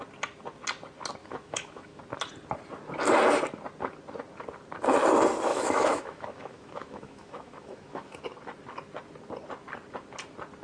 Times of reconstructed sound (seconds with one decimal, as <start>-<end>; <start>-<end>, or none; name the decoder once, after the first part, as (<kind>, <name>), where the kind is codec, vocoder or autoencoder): 1.2-2.0 (autoencoder, DAC-VAE); 5.5-8.2